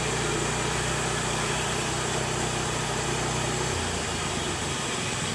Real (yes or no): no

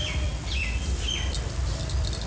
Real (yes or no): yes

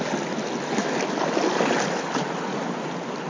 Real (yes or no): yes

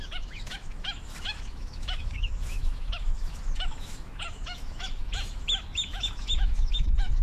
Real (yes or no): no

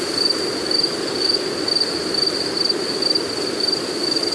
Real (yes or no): yes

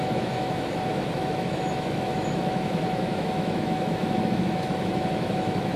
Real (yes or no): no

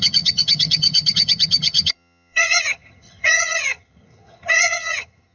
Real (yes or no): no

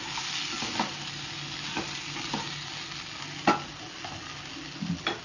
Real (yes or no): yes